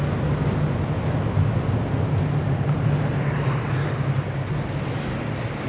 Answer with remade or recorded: recorded